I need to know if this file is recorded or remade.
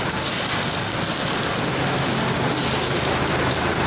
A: recorded